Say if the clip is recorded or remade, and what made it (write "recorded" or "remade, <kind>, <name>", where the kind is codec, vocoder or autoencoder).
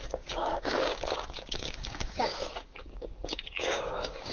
remade, codec, DAC